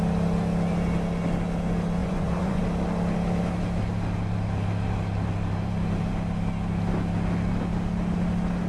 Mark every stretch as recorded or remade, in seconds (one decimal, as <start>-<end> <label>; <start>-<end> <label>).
0.0-2.0 recorded; 2.0-2.6 remade; 2.6-8.7 recorded